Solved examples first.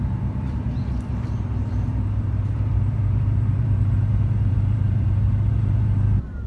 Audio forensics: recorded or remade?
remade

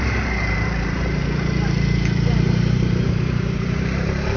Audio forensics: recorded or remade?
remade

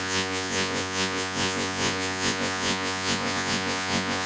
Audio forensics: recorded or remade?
remade